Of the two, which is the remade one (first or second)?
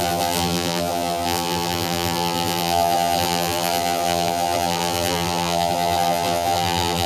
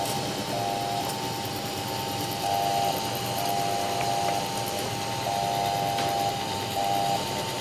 first